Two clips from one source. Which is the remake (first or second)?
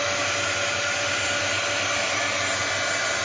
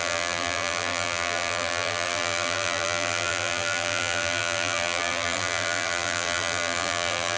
second